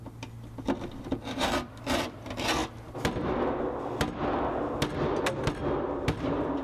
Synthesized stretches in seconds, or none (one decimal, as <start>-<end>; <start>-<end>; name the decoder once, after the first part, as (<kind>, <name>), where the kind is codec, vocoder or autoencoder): none